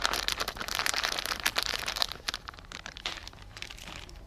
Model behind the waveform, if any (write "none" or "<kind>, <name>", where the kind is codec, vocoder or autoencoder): vocoder, BigVGAN v2